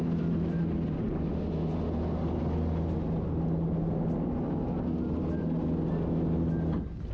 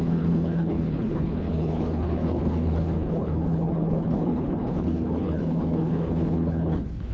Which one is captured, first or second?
first